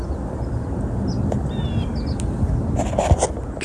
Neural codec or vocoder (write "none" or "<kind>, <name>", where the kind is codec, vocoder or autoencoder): none